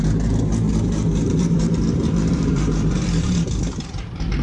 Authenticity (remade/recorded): remade